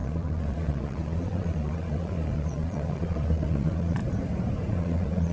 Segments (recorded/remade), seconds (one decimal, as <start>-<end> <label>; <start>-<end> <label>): 0.0-4.0 remade; 4.0-4.7 recorded; 4.7-5.3 remade

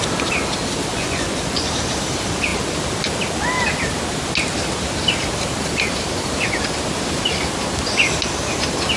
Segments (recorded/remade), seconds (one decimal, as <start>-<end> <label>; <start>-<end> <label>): 0.0-0.9 recorded; 0.9-1.7 remade; 1.7-9.0 recorded

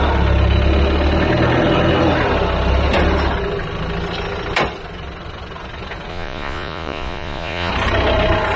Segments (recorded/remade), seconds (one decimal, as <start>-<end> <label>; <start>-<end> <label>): 0.0-6.1 recorded; 6.1-7.7 remade; 7.7-8.6 recorded

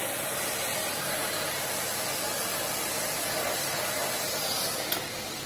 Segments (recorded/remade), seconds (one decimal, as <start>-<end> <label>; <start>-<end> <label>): 0.0-5.5 recorded

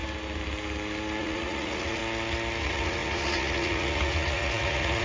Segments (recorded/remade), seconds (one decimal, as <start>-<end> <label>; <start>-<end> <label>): 0.0-1.2 recorded; 1.2-2.0 remade; 2.0-2.6 recorded; 2.6-5.0 remade

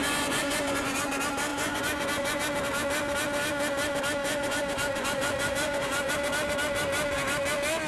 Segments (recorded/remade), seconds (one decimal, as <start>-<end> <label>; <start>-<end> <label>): 0.0-1.1 remade; 1.1-1.5 recorded; 1.5-2.4 remade; 2.4-4.2 recorded; 4.2-6.1 remade; 6.1-7.9 recorded